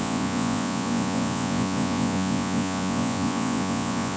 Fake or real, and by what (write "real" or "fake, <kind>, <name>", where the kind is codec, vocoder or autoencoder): fake, vocoder, Vocos